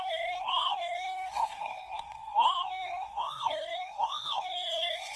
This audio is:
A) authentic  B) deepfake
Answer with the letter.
B